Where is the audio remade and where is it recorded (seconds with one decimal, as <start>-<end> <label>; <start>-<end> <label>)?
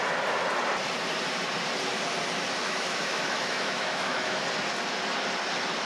0.0-2.6 recorded; 2.6-4.4 remade; 4.4-5.9 recorded